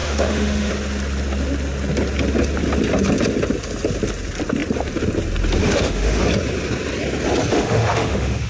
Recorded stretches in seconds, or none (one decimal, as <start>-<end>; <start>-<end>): 0.7-5.6; 6.2-7.5